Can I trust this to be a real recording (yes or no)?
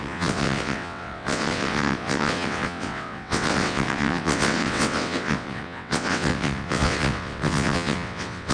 no